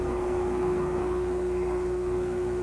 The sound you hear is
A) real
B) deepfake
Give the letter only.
B